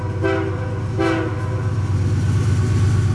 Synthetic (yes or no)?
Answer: no